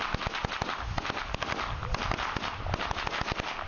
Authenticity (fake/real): real